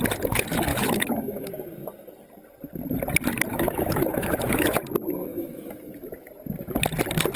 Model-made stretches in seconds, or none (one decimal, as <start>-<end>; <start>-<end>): 0.7-1.5; 3.5-4.8; 5.3-6.3